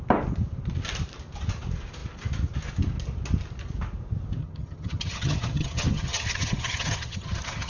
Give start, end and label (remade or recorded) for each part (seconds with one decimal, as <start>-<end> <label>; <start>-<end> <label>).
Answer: 0.0-4.4 recorded; 4.4-7.7 remade